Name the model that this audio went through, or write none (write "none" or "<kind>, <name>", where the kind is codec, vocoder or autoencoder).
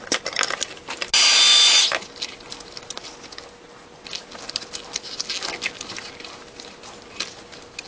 none